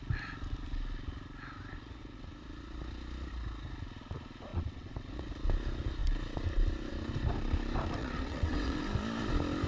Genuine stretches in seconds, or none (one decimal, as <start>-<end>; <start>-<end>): 0.0-4.5; 5.3-8.0; 8.8-9.7